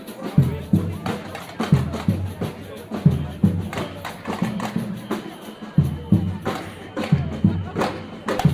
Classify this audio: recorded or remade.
recorded